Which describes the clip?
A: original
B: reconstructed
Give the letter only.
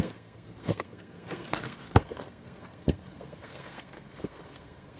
B